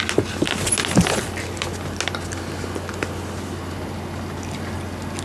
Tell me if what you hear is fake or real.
real